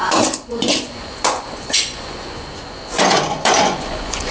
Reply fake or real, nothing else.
fake